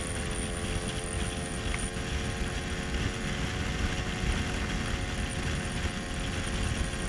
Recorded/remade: recorded